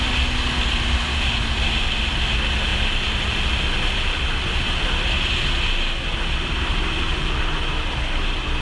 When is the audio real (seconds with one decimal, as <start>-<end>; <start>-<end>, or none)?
0.0-8.6